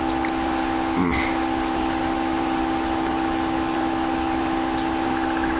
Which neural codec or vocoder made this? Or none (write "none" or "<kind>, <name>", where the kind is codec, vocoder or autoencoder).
none